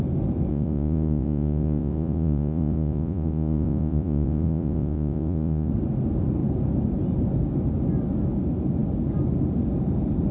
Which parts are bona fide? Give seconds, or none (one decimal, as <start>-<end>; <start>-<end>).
0.0-0.5; 5.7-10.3